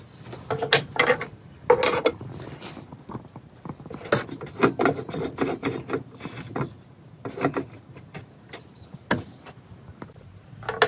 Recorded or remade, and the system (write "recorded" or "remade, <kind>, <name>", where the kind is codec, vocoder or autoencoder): recorded